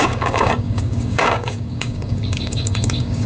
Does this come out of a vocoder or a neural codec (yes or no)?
yes